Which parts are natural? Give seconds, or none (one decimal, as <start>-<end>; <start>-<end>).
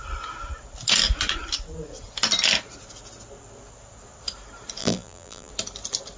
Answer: 0.0-4.8; 5.5-6.2